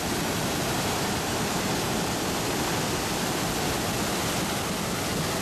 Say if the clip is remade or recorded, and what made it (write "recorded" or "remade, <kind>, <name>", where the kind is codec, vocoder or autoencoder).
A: recorded